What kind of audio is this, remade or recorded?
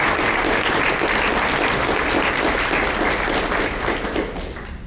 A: recorded